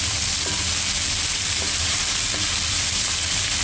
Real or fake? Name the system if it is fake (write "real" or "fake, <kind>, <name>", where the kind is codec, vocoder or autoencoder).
real